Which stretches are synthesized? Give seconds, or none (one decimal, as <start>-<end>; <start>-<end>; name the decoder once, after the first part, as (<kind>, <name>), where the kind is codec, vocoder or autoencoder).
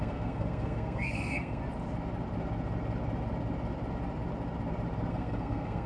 0.0-1.6 (codec, SNAC); 5.1-5.9